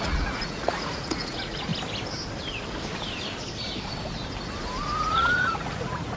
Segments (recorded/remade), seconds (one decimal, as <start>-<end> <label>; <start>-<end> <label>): 0.0-1.7 remade; 1.7-4.8 recorded; 4.8-6.2 remade